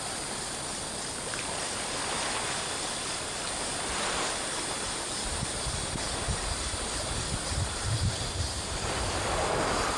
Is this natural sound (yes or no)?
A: yes